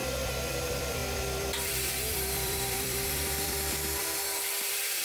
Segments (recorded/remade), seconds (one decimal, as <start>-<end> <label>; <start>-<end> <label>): 0.0-0.5 recorded; 0.5-5.0 remade